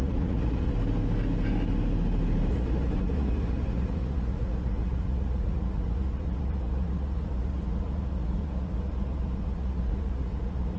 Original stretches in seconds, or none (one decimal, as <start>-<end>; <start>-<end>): 0.7-2.5